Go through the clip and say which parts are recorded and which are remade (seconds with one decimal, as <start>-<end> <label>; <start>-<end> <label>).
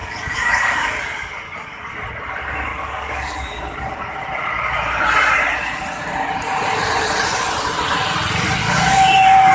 0.0-1.9 remade; 1.9-2.7 recorded; 2.7-3.6 remade; 3.6-8.6 recorded; 8.6-9.5 remade